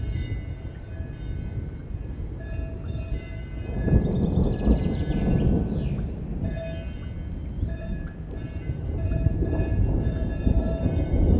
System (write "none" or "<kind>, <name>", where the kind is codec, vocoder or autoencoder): none